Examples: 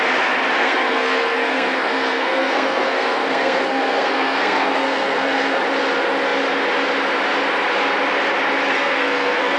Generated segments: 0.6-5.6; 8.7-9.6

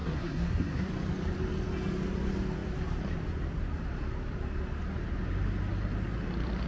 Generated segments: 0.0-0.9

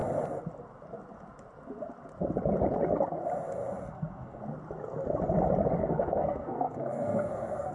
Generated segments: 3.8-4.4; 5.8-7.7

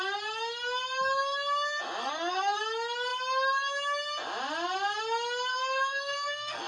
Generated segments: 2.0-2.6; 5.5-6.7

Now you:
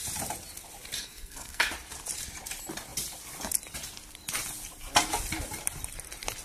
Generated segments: 1.0-1.7

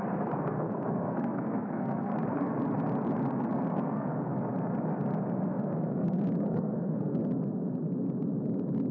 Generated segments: 0.0-2.5; 3.7-4.3; 5.5-7.2